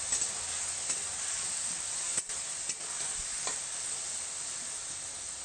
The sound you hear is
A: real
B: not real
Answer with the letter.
A